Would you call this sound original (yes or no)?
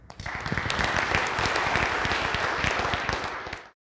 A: yes